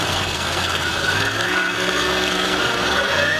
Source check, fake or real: fake